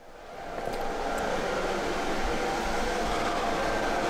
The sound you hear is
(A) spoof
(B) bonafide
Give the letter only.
B